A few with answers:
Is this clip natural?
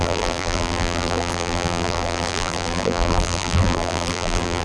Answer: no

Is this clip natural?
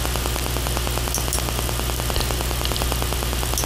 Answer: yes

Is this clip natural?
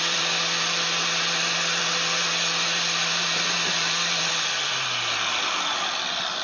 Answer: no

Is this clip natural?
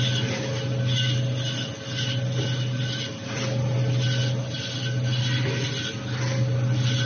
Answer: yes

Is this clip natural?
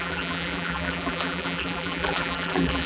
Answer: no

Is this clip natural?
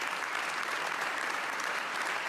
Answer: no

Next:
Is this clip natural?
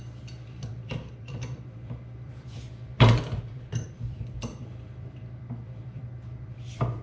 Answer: no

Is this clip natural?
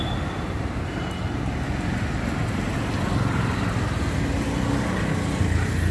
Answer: yes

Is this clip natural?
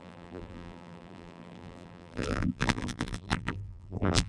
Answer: no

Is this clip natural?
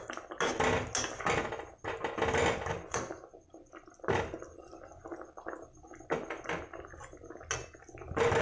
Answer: yes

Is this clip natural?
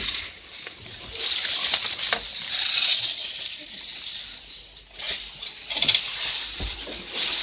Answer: no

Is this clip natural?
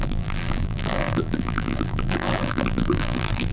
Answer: no